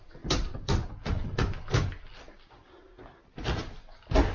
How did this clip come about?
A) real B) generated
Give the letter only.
A